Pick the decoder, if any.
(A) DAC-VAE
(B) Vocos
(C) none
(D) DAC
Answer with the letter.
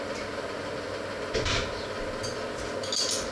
C